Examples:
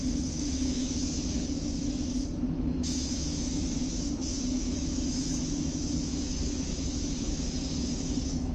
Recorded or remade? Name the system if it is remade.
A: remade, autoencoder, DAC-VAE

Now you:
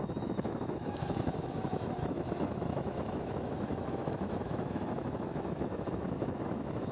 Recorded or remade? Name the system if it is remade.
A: remade, autoencoder, DAC-VAE